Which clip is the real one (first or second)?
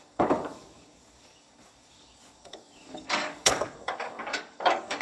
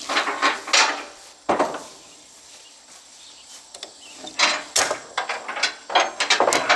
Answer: second